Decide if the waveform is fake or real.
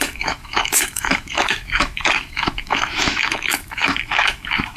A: fake